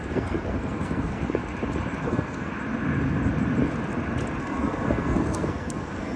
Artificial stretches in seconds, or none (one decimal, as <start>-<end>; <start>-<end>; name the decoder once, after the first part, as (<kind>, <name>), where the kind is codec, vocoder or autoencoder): 0.0-1.4 (codec, SNAC); 2.0-2.5; 4.4-6.2